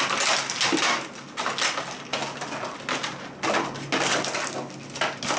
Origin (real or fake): real